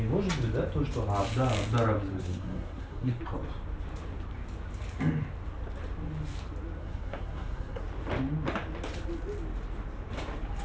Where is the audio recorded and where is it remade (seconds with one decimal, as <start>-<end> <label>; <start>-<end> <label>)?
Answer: 0.0-2.1 recorded; 2.1-3.2 remade; 3.2-6.8 recorded; 6.8-7.8 remade; 7.8-10.6 recorded